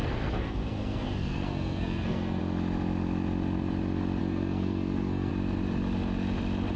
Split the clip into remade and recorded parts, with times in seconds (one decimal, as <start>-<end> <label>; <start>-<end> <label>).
0.0-2.4 remade; 2.4-4.2 recorded; 4.2-5.3 remade; 5.3-6.8 recorded